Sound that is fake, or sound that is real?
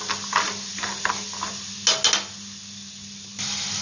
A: real